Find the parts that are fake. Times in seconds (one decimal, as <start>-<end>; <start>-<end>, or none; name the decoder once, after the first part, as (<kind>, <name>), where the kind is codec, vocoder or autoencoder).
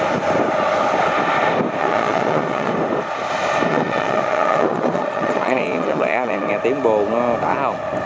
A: 1.8-2.7 (vocoder, Vocos); 3.7-6.5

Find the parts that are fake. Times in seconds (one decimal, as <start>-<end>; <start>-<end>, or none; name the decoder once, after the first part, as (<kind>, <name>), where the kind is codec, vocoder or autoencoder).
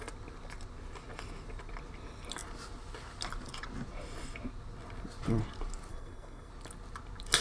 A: 5.9-6.5 (codec, SNAC)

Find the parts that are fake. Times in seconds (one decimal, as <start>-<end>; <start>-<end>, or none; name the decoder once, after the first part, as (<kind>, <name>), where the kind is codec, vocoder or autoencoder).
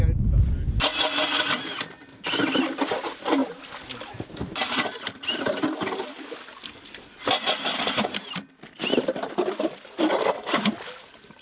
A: none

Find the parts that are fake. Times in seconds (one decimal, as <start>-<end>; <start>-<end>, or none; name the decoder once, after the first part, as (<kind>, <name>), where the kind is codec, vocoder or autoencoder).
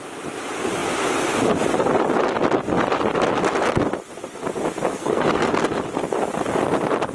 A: 4.9-5.5 (codec, SNAC)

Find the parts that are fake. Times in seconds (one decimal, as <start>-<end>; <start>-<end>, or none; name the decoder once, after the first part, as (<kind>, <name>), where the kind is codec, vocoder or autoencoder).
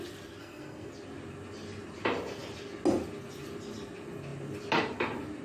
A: 0.4-0.9 (codec, SNAC)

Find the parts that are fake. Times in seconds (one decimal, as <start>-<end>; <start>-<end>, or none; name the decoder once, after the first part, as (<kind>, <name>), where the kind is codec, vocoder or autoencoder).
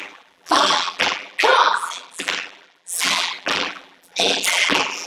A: 0.0-5.1 (vocoder, BigVGAN v2)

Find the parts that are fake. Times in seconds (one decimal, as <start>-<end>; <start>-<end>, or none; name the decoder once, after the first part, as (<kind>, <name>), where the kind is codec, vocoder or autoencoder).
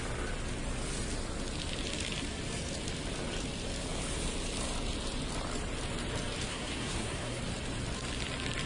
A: 6.5-7.4 (codec, SNAC)